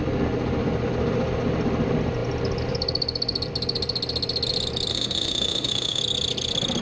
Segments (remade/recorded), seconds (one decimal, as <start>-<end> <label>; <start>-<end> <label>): 0.0-4.9 recorded; 4.9-6.0 remade; 6.0-6.8 recorded